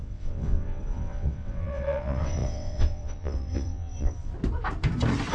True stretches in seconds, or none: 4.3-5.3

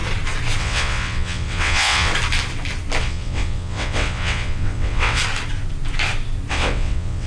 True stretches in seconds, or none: 0.0-0.6; 2.1-3.0; 5.2-6.5